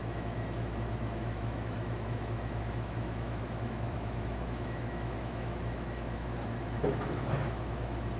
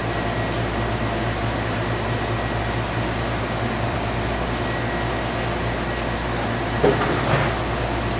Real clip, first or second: second